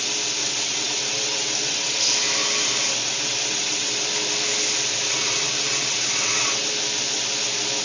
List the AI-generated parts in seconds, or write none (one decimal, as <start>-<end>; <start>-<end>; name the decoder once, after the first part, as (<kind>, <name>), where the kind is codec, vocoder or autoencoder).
0.4-2.0 (vocoder, WaveNeXt); 3.0-3.9; 4.9-6.7